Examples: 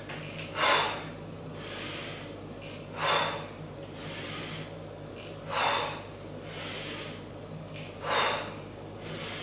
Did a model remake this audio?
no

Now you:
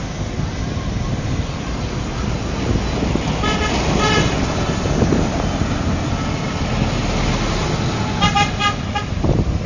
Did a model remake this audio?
no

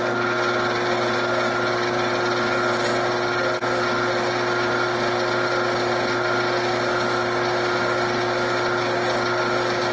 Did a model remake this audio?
no